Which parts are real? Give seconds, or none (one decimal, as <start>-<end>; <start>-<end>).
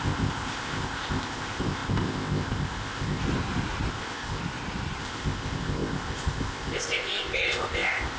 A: 3.2-3.9; 4.4-5.0